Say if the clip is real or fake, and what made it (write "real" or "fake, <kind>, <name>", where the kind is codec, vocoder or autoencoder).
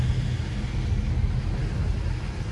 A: real